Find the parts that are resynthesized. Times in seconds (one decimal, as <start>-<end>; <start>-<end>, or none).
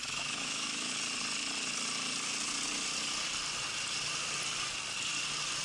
0.0-0.9